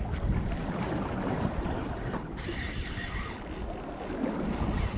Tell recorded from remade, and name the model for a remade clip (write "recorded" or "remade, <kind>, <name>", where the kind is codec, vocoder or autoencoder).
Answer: recorded